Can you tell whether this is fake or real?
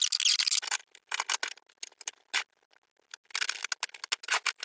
real